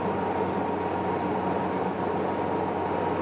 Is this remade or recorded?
recorded